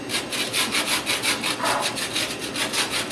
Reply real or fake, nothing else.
real